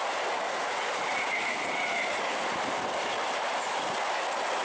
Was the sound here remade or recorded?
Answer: recorded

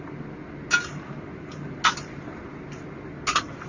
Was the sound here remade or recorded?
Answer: recorded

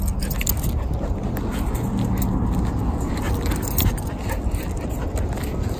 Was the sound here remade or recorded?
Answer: recorded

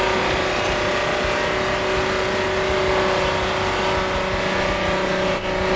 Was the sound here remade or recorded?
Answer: recorded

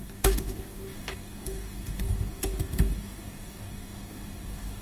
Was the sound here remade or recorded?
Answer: remade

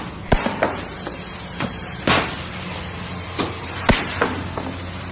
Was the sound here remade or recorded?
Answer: recorded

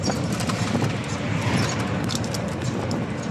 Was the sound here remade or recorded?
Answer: recorded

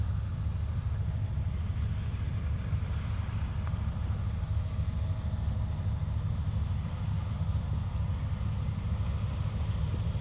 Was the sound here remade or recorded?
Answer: recorded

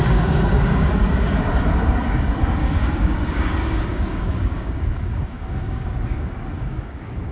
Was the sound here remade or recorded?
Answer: remade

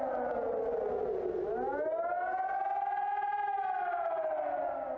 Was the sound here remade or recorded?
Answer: recorded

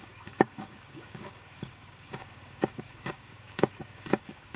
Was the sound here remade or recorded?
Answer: remade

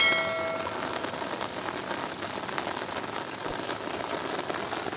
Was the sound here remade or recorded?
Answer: recorded